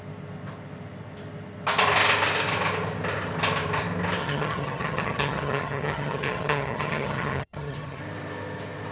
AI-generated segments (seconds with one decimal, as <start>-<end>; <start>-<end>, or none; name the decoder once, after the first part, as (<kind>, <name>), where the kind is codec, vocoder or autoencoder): 4.2-8.0 (vocoder, HiFi-GAN)